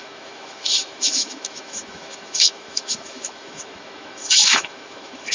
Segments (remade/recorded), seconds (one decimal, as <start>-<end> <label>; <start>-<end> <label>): 0.0-5.3 remade